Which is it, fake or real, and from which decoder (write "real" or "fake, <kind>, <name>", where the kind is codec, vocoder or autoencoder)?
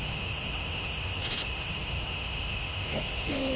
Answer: fake, autoencoder, DAC-VAE